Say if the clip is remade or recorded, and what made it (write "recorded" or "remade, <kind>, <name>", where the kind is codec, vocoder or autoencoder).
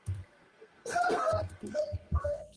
remade, codec, SNAC